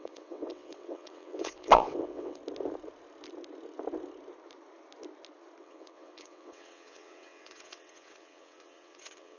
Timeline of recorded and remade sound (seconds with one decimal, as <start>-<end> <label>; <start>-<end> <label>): 0.0-2.4 remade; 2.4-5.6 recorded; 5.6-9.4 remade